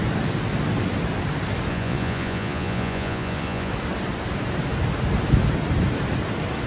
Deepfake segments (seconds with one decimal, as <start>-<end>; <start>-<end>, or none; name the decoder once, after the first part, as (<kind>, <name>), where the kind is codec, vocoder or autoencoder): 1.7-3.7 (vocoder, Vocos)